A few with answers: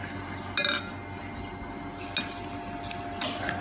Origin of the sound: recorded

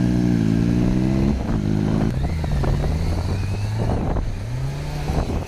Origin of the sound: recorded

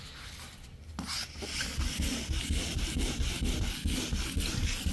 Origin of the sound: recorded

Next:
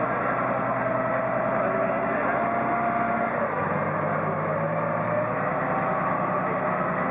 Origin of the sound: recorded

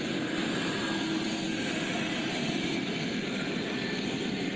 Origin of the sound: recorded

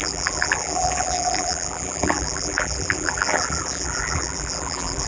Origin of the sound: remade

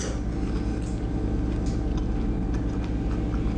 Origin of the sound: recorded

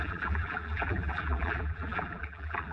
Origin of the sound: remade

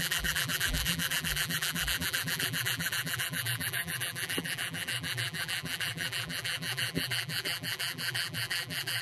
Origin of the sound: remade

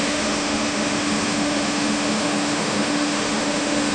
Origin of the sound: remade